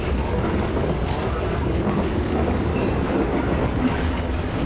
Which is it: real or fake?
fake